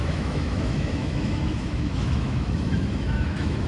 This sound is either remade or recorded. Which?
remade